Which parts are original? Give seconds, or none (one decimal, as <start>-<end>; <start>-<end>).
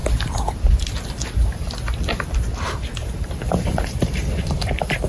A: 0.0-3.0; 4.5-5.1